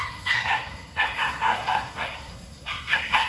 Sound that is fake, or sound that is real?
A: fake